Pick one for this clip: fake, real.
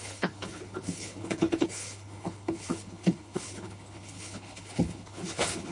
fake